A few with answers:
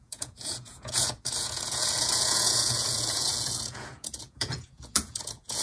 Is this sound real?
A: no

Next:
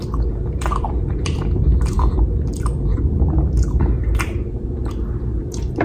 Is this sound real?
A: no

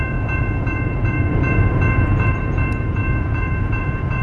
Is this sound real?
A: no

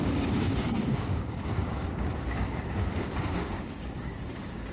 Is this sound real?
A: no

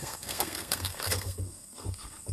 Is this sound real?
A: no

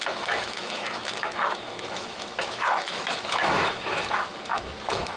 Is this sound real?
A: no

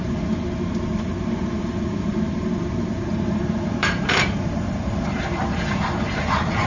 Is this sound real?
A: no